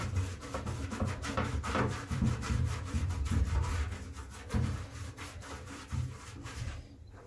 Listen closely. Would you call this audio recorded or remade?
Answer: remade